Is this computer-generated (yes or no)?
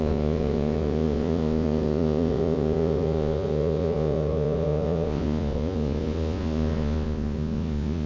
yes